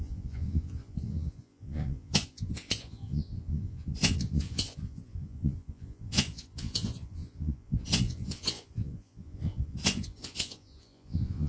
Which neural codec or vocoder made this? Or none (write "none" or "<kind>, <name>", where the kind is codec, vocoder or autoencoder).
vocoder, Vocos